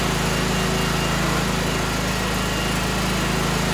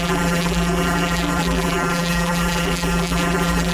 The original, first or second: first